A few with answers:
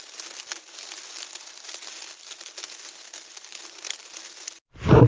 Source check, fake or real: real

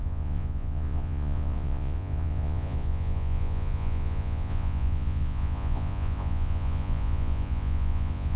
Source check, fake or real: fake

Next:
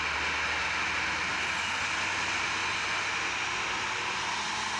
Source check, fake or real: real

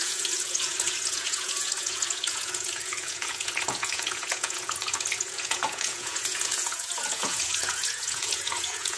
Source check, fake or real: fake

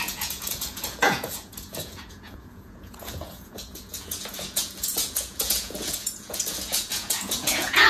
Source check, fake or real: fake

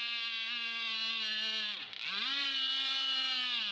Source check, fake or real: real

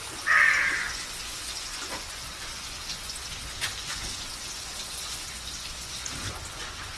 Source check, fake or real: fake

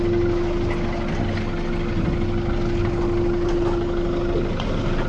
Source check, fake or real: real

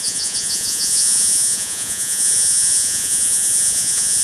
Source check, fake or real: fake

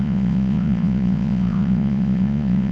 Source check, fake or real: fake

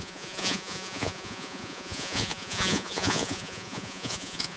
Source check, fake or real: fake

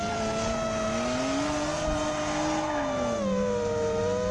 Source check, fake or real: real